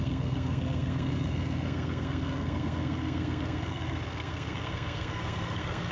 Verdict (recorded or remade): remade